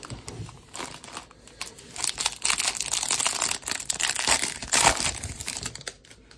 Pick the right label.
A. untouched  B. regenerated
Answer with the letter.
A